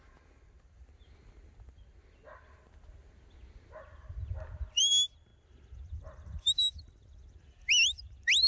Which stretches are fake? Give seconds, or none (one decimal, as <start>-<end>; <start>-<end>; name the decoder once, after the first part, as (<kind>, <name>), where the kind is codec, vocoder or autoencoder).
none